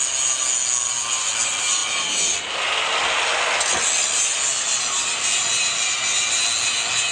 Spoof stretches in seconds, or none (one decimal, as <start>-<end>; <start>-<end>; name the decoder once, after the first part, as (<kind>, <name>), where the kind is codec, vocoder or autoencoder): none